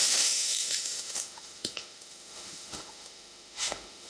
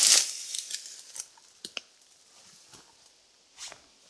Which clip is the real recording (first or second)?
second